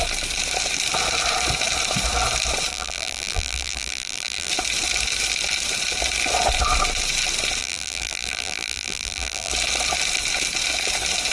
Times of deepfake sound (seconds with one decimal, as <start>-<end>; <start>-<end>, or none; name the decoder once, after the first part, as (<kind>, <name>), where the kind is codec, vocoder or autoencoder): 2.7-4.5 (vocoder, BigVGAN v2); 7.6-9.5